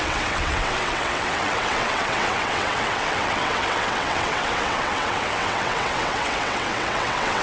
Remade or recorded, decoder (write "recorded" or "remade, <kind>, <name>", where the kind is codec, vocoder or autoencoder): remade, vocoder, WaveNeXt